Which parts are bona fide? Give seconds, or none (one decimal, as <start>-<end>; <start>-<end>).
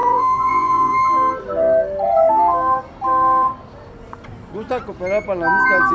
0.9-5.9